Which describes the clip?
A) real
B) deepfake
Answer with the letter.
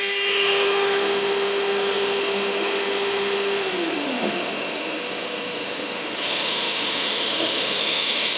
B